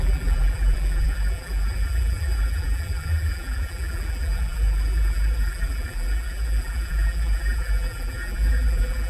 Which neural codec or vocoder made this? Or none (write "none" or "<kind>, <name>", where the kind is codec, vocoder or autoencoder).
vocoder, BigVGAN v2